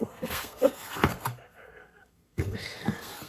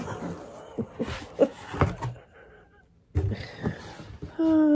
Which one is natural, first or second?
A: second